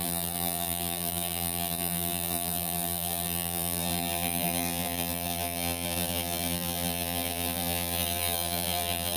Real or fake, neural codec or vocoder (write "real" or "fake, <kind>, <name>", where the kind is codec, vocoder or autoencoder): fake, vocoder, BigVGAN v2